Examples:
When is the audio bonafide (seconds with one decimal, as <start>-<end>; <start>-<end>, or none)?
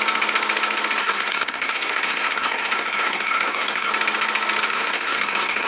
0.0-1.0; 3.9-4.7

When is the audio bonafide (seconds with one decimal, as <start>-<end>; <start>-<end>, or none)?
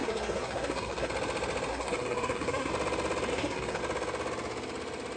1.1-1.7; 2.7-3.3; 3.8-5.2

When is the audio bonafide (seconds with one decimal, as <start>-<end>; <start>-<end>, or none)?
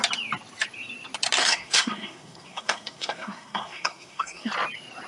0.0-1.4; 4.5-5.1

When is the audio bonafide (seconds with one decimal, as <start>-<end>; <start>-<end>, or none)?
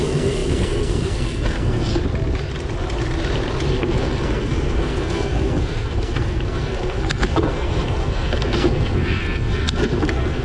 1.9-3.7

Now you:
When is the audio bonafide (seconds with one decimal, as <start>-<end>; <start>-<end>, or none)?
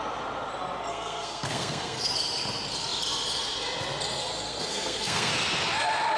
0.0-0.9; 2.1-4.2; 5.3-6.2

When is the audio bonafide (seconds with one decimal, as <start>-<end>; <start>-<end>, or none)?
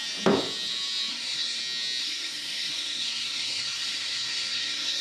0.0-1.1; 1.6-2.0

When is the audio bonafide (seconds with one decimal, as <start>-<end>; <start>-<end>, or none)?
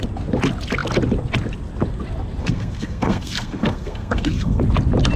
0.0-2.4; 4.6-5.2